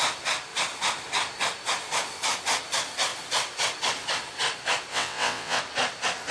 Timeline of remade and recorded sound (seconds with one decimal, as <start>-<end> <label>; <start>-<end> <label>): 0.0-4.9 recorded; 4.9-5.6 remade; 5.6-6.3 recorded